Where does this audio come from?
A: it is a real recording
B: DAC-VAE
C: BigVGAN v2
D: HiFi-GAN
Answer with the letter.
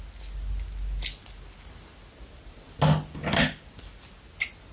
A